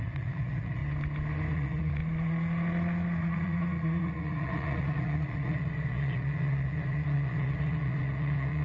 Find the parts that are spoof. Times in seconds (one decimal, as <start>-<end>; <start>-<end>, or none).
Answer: 0.0-0.8; 1.5-2.0; 3.2-8.6